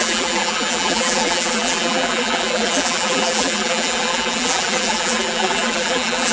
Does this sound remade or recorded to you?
remade